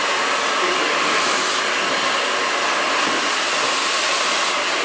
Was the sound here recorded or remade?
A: recorded